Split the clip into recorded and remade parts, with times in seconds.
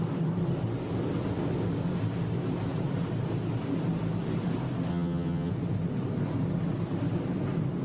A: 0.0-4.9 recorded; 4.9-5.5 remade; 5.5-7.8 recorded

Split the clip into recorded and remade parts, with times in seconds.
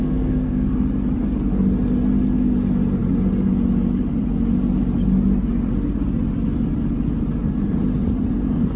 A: 0.0-0.7 remade; 0.7-8.8 recorded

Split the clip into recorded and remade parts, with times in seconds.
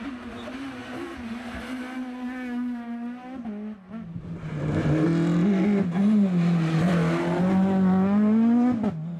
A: 0.0-9.2 recorded